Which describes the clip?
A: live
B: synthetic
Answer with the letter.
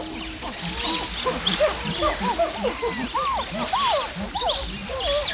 A